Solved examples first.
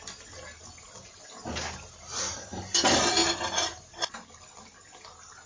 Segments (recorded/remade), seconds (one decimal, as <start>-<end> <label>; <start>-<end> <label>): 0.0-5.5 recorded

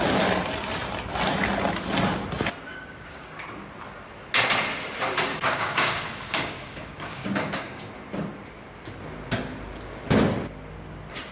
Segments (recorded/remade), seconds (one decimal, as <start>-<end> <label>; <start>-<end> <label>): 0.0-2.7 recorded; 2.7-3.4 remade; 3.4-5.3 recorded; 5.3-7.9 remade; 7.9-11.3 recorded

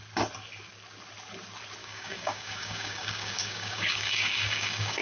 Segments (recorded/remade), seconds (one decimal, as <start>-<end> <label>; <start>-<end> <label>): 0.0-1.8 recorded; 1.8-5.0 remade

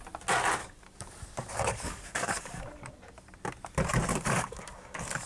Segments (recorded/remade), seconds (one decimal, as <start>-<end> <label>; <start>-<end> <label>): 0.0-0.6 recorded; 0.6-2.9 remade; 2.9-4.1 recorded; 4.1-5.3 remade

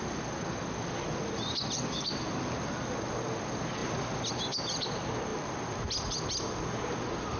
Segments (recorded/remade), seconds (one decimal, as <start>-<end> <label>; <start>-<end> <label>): 0.0-7.4 recorded

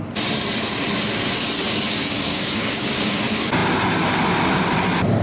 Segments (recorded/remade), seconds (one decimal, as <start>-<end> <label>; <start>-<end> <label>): 0.0-1.9 recorded; 1.9-3.2 remade; 3.2-5.2 recorded